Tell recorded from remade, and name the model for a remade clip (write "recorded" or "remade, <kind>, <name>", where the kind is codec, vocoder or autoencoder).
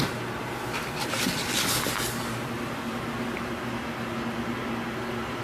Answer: recorded